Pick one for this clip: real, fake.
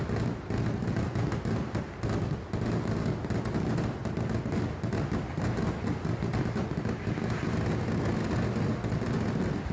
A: real